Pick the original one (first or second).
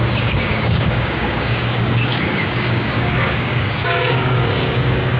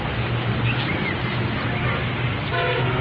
second